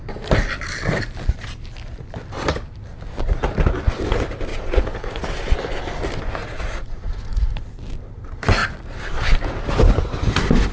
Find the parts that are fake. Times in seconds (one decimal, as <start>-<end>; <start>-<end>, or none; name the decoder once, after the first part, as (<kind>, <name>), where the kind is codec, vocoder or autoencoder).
4.5-5.2 (vocoder, Vocos); 6.4-7.5